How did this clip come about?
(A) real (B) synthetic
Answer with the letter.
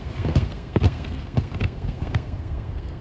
B